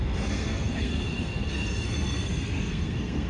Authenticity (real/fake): fake